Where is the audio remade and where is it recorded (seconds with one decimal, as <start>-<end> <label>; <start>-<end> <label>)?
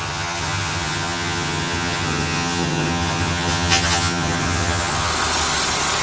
0.0-5.1 remade; 5.1-6.0 recorded